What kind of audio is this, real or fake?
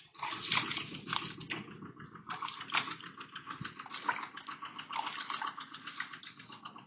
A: real